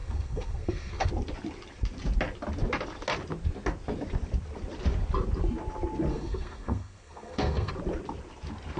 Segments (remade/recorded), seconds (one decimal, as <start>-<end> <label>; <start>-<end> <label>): 0.0-1.1 remade; 1.1-6.1 recorded; 6.1-7.7 remade; 7.7-8.8 recorded